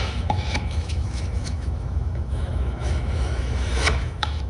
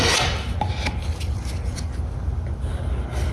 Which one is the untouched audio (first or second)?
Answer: second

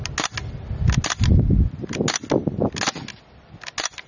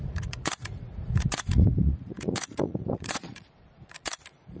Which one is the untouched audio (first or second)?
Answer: first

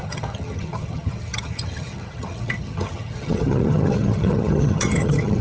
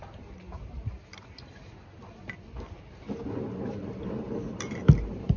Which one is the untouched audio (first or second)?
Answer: second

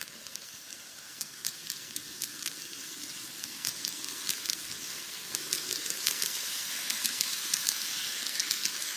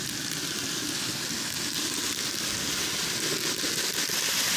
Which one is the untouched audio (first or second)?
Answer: second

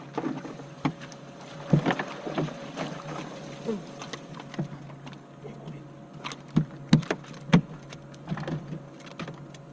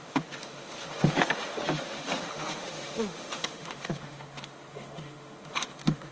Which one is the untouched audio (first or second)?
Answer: first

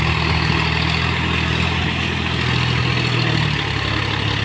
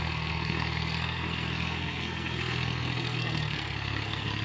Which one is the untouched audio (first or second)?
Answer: first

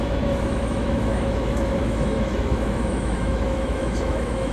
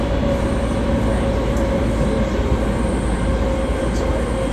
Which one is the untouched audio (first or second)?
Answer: second